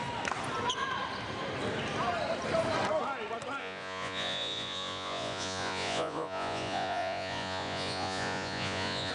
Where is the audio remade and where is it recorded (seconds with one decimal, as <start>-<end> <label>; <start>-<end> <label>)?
0.0-3.6 recorded; 3.6-9.1 remade